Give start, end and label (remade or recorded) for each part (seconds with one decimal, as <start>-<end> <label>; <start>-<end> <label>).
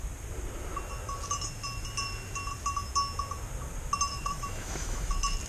0.0-4.1 recorded; 4.1-5.1 remade; 5.1-5.5 recorded